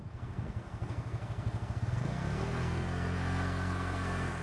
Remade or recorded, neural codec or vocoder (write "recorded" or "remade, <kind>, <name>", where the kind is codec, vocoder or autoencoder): remade, codec, SNAC